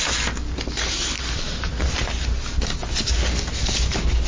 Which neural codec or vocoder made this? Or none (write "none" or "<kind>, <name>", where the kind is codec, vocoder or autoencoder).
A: none